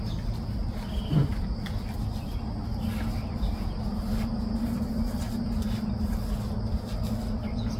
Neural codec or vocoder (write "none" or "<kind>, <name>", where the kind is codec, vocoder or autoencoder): none